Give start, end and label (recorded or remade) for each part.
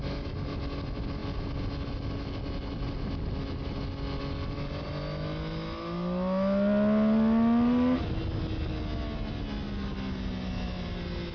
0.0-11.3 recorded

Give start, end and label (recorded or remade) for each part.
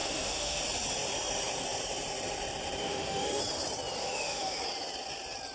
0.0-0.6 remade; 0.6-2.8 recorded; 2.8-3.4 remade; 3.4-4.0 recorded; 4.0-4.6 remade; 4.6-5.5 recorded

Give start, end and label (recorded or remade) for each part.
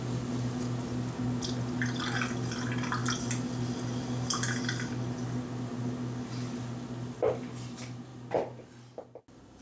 0.0-9.6 recorded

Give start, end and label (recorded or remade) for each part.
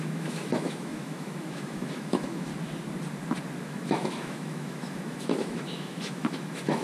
0.0-2.5 remade; 2.5-3.6 recorded; 3.6-6.8 remade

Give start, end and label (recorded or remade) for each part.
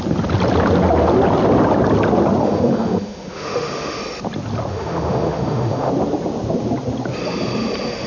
0.0-2.4 recorded; 2.4-4.0 remade; 4.0-4.7 recorded; 4.7-5.9 remade; 5.9-8.1 recorded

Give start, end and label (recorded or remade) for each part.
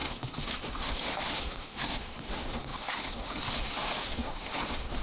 0.0-5.0 remade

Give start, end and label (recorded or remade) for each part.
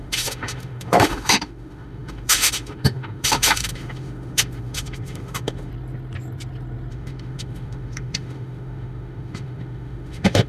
0.0-5.7 remade; 5.7-6.9 recorded; 6.9-10.5 remade